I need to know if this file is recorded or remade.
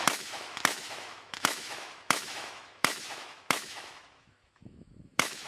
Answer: remade